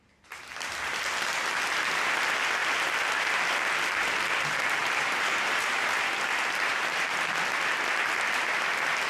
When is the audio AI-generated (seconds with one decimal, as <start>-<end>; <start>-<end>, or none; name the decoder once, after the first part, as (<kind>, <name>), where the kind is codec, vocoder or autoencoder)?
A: 4.8-6.1 (vocoder, BigVGAN v2); 6.7-7.3